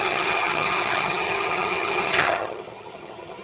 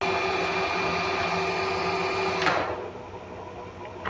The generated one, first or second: first